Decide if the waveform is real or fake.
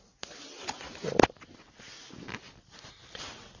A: real